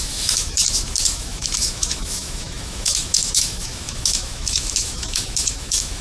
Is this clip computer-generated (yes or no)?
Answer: yes